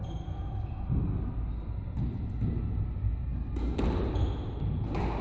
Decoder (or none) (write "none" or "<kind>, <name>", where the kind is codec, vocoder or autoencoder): none